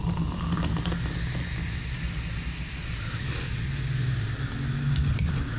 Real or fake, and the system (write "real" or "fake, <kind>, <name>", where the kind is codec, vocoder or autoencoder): real